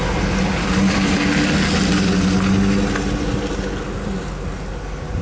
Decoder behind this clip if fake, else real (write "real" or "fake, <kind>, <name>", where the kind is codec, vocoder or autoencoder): real